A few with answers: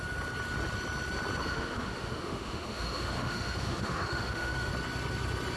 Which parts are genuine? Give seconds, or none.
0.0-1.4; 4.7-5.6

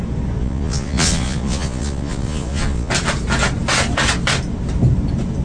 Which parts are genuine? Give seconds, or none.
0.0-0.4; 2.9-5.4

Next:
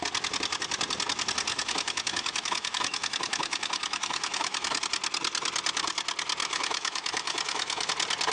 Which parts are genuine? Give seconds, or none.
0.0-1.5; 4.8-6.4; 7.9-8.3